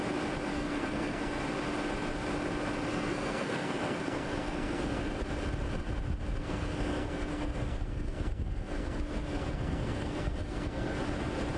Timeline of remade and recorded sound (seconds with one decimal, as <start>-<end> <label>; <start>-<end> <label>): 0.0-0.5 recorded; 0.5-1.4 remade; 1.4-2.9 recorded; 2.9-5.0 remade; 5.0-6.4 recorded; 6.4-11.0 remade; 11.0-11.6 recorded

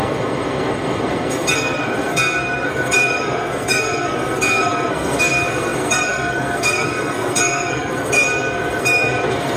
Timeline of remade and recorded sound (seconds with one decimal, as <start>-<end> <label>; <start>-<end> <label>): 0.0-9.6 remade

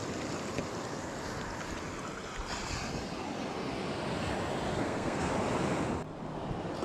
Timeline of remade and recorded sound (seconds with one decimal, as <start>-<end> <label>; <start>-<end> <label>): 0.0-4.7 recorded; 4.7-5.3 remade; 5.3-6.8 recorded

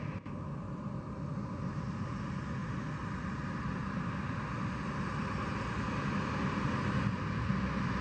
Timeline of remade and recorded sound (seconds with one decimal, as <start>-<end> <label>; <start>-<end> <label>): 0.0-8.0 recorded

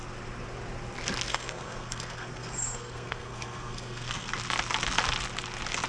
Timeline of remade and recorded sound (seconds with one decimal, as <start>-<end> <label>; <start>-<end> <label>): 0.0-1.3 recorded; 1.3-4.3 remade; 4.3-5.9 recorded

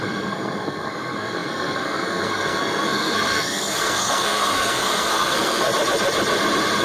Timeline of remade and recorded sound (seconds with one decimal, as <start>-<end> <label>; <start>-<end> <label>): 0.0-5.7 remade; 5.7-6.8 recorded

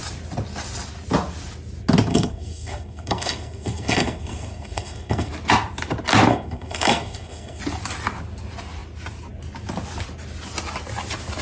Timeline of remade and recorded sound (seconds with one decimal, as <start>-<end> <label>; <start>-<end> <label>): 0.0-2.1 recorded; 2.1-5.3 remade; 5.3-6.3 recorded; 6.3-7.6 remade; 7.6-11.4 recorded

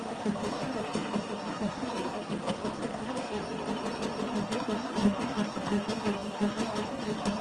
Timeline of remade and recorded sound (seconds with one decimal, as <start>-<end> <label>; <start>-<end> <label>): 0.0-3.4 remade; 3.4-4.3 recorded; 4.3-7.4 remade